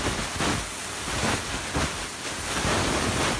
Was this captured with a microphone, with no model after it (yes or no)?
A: yes